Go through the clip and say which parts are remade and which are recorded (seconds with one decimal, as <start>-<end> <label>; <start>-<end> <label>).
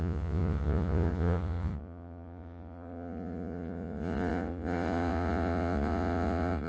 0.0-6.7 remade